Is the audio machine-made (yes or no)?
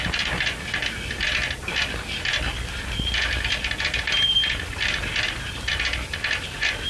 no